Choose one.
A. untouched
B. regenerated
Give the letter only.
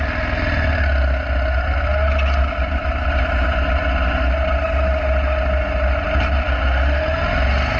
A